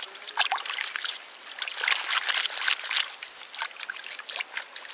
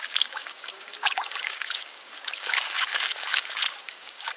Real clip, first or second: first